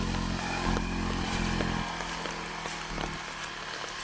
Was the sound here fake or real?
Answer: real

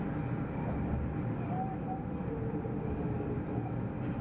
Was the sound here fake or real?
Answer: real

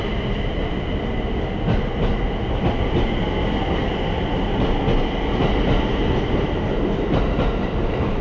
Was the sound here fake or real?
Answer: real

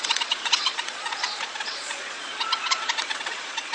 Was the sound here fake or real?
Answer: fake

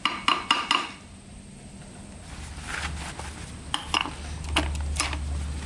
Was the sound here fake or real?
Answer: real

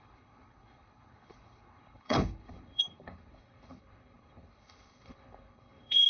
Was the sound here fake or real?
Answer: fake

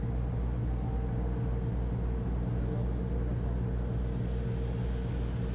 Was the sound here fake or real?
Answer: real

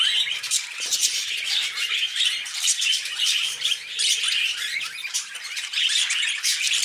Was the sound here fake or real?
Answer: fake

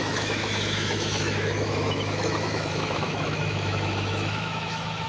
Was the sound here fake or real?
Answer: fake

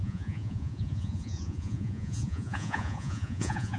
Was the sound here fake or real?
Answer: fake